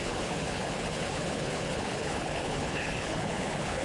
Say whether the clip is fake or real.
fake